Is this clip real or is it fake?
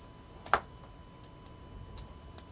real